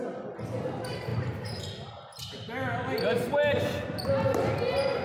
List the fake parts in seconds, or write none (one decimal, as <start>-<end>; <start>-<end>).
none